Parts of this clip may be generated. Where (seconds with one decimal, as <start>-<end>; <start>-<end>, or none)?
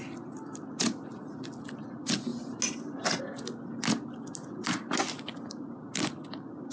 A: none